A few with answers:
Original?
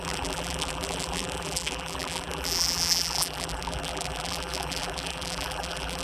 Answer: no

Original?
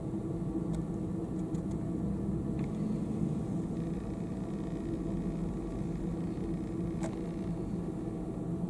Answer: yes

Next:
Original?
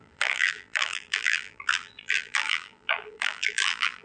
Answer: no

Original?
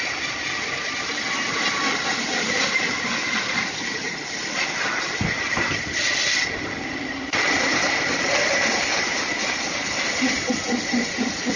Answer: yes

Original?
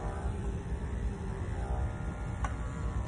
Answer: no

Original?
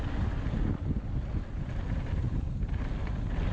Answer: yes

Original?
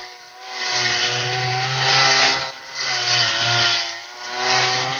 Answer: yes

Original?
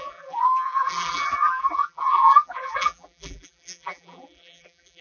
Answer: no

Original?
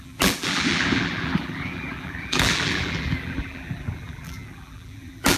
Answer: no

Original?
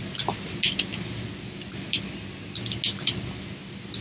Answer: yes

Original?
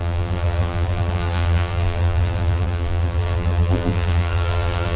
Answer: no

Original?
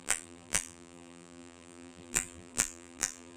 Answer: no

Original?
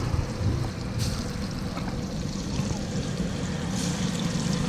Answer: no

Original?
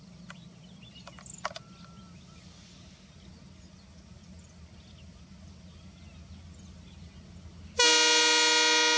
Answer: yes